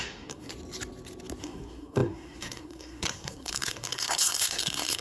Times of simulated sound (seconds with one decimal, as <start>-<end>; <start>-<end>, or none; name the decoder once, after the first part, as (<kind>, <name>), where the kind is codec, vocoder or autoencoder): 0.0-0.5 (codec, SNAC); 1.4-5.0